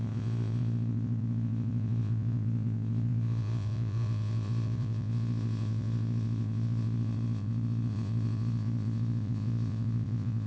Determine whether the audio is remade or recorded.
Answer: remade